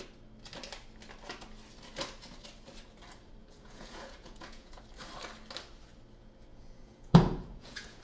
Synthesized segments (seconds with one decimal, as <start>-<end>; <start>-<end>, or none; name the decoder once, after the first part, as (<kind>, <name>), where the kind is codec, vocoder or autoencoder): 3.4-4.8 (vocoder, Vocos); 6.5-8.0